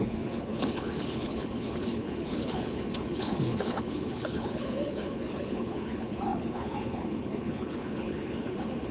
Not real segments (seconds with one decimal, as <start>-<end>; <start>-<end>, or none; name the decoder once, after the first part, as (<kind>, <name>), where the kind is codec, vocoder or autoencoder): 0.0-8.9 (codec, HILCodec)